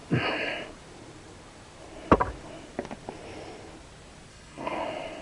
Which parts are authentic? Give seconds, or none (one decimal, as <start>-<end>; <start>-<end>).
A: 0.0-4.3; 4.8-5.2